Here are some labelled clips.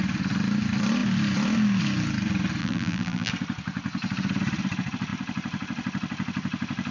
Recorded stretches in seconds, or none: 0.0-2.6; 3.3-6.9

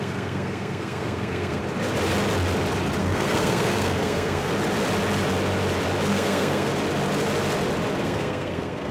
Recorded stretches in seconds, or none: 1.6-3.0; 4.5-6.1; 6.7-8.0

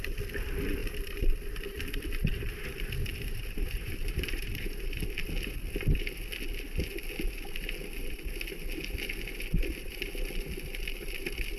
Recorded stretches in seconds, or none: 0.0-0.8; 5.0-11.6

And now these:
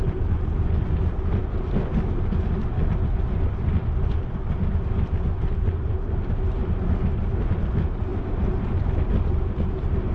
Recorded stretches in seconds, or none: 0.0-10.1